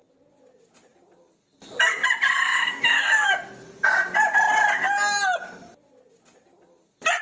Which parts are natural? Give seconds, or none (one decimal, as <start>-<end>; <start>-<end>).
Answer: 0.0-2.5; 3.3-7.2